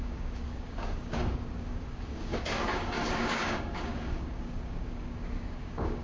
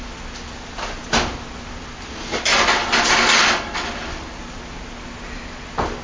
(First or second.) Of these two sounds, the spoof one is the first